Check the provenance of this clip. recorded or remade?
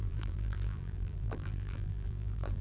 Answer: remade